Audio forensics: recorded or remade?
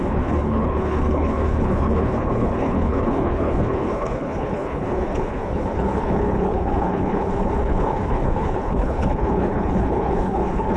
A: remade